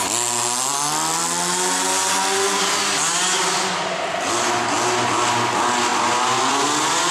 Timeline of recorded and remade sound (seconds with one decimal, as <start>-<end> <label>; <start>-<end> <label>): 0.0-7.1 recorded